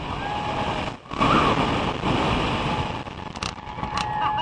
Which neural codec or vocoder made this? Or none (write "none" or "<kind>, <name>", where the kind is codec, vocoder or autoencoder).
none